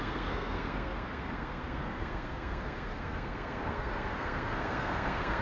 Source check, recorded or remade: remade